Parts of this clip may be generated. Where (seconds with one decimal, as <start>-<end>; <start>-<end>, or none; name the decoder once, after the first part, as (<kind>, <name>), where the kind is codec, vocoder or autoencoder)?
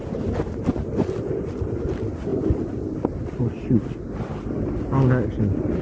none